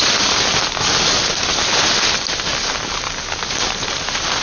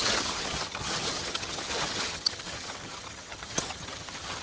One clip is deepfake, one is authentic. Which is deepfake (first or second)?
second